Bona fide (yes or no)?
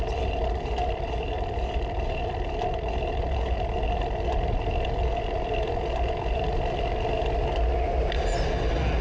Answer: yes